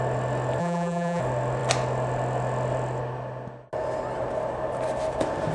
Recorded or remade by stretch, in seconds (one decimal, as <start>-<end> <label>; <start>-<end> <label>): 0.0-0.6 recorded; 0.6-1.2 remade; 1.2-5.5 recorded